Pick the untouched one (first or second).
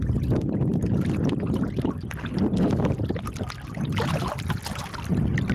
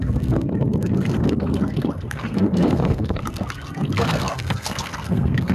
first